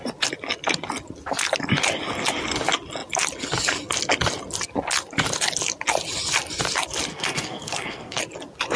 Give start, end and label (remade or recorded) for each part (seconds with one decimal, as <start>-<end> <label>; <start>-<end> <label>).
0.0-7.1 recorded; 7.1-8.2 remade; 8.2-8.8 recorded